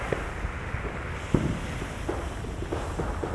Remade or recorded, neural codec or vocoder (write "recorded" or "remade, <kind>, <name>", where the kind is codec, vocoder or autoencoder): recorded